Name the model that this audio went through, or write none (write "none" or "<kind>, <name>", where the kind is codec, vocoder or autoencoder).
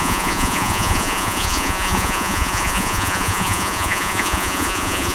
vocoder, Vocos